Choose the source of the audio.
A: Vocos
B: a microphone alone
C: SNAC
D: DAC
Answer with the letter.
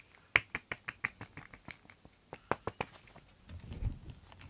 B